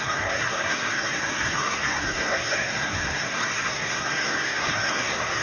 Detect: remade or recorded remade